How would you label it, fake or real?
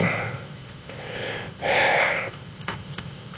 fake